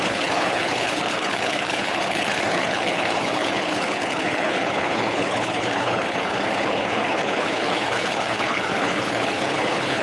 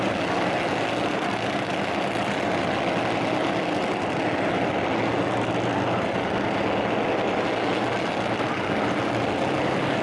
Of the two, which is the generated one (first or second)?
first